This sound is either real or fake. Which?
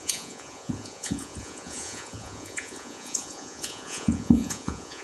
fake